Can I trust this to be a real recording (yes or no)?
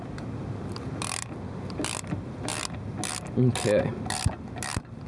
yes